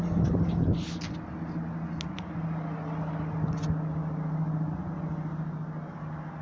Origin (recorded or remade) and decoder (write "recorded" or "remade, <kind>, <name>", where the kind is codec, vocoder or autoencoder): recorded